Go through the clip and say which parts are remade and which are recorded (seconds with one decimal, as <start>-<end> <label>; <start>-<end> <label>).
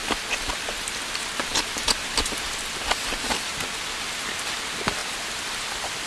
0.0-1.5 recorded; 1.5-2.5 remade; 2.5-5.0 recorded; 5.0-6.1 remade